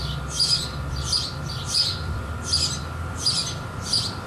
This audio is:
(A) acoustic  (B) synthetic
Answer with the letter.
B